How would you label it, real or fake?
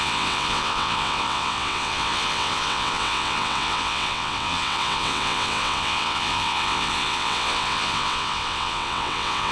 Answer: fake